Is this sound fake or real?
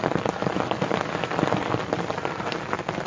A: real